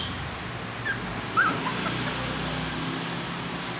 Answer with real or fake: real